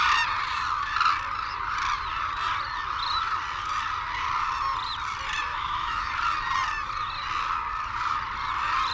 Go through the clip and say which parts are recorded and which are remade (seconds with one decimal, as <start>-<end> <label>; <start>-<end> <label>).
0.0-5.5 recorded; 5.5-6.1 remade; 6.1-8.9 recorded